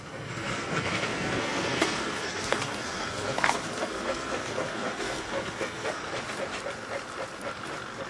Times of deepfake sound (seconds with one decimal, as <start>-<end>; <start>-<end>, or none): 0.0-6.0